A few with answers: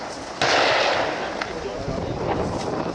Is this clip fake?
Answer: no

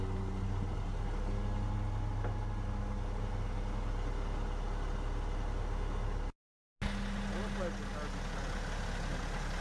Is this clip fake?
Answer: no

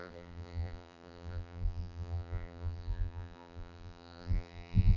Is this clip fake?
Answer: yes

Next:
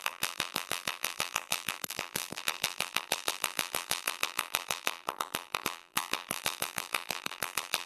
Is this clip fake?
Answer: yes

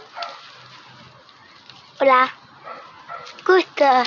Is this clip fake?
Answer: no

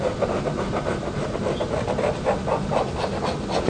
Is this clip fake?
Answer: no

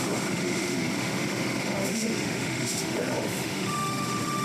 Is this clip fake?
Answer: yes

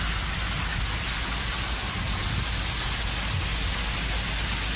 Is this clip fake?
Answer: no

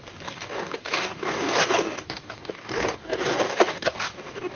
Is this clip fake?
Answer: yes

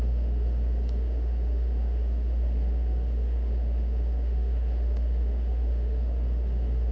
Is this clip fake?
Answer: yes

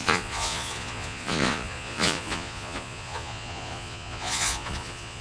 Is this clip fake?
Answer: yes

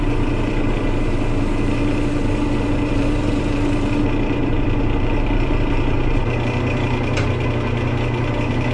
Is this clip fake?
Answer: yes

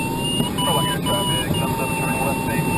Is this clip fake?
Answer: no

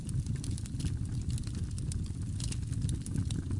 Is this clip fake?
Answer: no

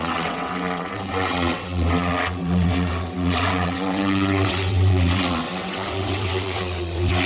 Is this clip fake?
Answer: yes